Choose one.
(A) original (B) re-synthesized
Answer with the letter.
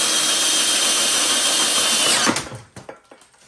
A